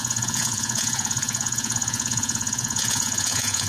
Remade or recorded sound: remade